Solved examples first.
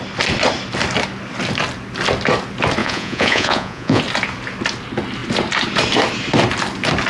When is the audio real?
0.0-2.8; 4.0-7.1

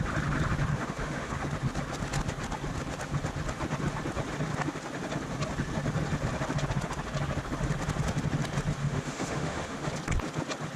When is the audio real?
0.0-0.7; 1.4-8.8; 9.9-10.8

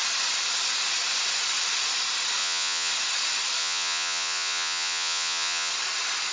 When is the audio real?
0.0-2.4; 2.9-3.6; 5.7-6.3

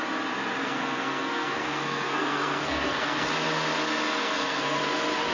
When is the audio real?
0.0-0.6; 3.3-4.2; 4.8-5.3

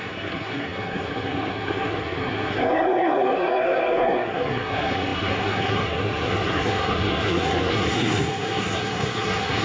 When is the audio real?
none

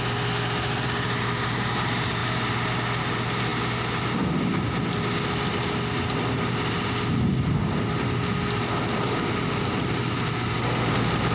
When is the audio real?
0.0-11.3

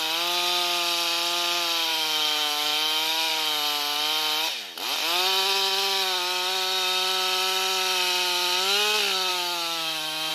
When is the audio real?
0.0-1.9; 3.3-9.3